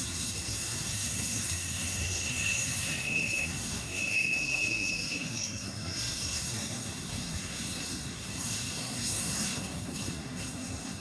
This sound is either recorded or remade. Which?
remade